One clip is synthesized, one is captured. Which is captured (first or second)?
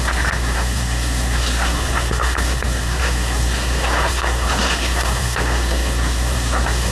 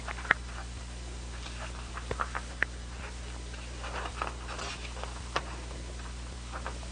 second